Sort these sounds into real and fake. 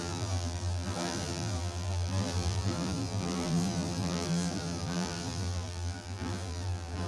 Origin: fake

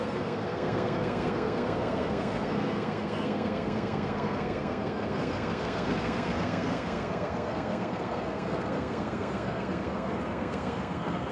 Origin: fake